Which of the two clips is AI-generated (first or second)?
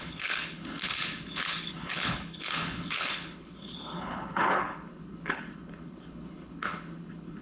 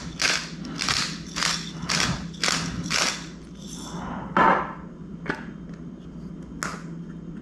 first